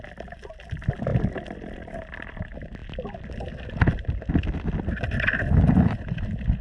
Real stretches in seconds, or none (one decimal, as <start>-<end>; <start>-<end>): 0.0-6.6